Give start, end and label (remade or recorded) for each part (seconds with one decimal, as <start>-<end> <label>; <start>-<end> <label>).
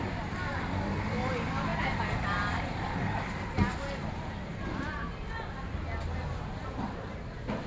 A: 0.0-7.7 recorded